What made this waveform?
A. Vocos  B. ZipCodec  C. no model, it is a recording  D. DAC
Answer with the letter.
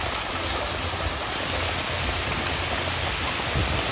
C